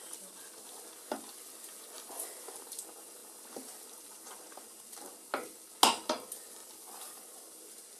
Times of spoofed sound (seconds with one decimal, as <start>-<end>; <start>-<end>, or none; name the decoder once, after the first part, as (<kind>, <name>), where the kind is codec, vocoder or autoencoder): none